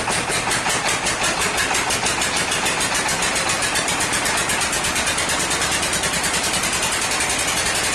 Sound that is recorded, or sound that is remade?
recorded